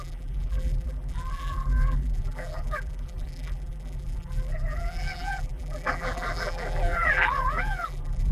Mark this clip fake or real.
fake